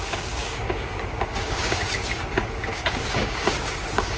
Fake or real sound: fake